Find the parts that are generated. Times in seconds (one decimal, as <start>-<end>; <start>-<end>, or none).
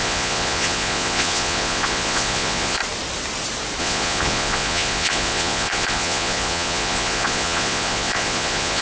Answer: 0.0-2.8; 3.8-8.8